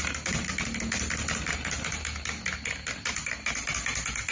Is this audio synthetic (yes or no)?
no